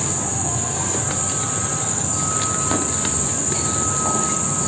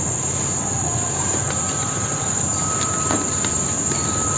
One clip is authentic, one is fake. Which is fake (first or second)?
second